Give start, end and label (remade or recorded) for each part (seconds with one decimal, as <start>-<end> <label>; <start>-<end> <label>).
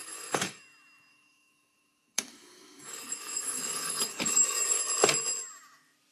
0.0-0.6 remade; 0.6-1.1 recorded; 1.1-4.8 remade; 4.8-6.1 recorded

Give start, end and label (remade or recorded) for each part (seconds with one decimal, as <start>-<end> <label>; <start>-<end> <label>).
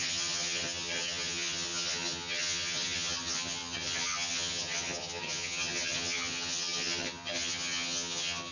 0.0-8.5 remade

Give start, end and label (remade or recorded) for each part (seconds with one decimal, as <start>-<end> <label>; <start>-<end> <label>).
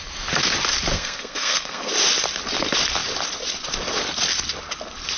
0.0-0.9 recorded; 0.9-1.9 remade; 1.9-5.2 recorded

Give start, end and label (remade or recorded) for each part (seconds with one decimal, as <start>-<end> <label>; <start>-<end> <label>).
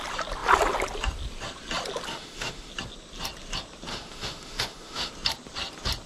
0.0-2.1 recorded; 2.1-2.7 remade; 2.7-3.9 recorded; 3.9-5.1 remade; 5.1-6.1 recorded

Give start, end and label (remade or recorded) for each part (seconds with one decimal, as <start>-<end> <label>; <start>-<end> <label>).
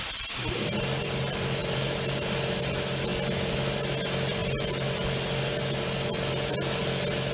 0.0-7.3 recorded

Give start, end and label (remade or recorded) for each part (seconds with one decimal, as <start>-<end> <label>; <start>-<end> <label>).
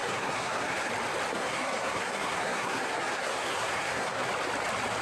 0.0-0.9 remade; 0.9-1.3 recorded; 1.3-4.3 remade; 4.3-5.0 recorded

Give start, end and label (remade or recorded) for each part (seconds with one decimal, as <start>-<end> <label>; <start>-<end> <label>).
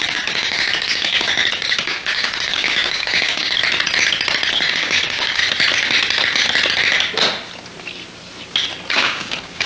0.0-3.6 remade; 3.6-4.5 recorded; 4.5-5.4 remade; 5.4-8.9 recorded; 8.9-9.7 remade